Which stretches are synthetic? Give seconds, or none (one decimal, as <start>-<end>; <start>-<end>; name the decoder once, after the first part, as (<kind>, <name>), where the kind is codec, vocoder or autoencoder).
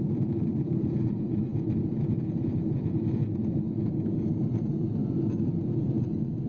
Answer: 0.0-1.5 (vocoder, BigVGAN v2); 2.5-3.2; 3.8-5.0